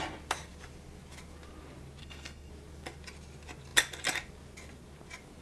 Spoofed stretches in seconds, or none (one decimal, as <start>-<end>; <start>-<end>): 2.0-2.5